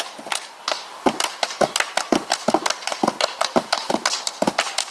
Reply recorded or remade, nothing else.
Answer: recorded